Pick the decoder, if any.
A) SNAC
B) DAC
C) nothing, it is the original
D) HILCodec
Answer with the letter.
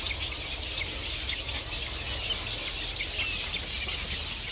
C